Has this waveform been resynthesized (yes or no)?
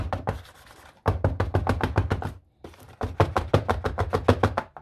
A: no